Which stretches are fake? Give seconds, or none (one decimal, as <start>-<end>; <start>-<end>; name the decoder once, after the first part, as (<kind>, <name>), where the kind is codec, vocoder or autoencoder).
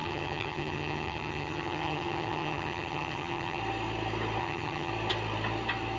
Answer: 0.0-3.6 (vocoder, HiFi-GAN); 4.4-4.9